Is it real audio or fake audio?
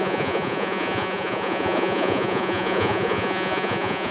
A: fake